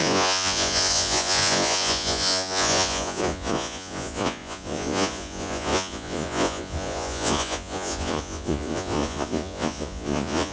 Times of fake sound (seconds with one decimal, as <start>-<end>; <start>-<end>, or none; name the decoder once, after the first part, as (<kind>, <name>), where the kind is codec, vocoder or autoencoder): 0.0-10.5 (vocoder, Vocos)